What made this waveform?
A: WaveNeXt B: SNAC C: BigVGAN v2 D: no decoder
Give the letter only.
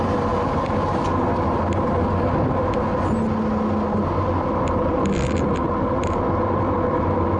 D